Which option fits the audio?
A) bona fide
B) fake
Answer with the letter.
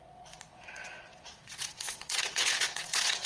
B